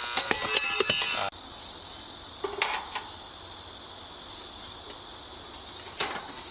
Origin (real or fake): real